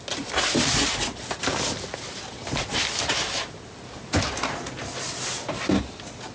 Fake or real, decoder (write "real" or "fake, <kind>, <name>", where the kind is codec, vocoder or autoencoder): real